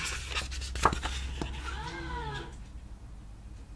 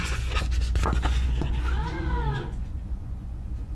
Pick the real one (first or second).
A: first